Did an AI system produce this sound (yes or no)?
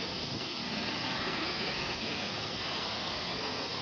yes